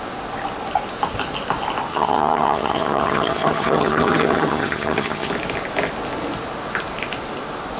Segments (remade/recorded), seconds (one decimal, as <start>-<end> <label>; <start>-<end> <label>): 0.0-1.9 recorded; 1.9-5.3 remade; 5.3-7.8 recorded